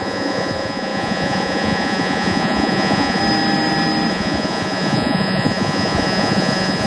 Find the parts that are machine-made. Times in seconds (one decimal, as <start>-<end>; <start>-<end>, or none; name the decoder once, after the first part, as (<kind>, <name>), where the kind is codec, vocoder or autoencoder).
0.0-3.2 (vocoder, Vocos); 4.1-6.9